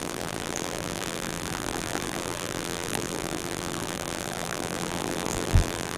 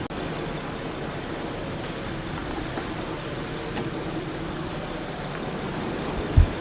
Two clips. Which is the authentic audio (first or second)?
second